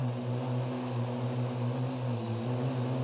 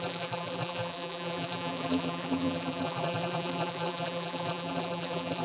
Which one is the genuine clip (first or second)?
first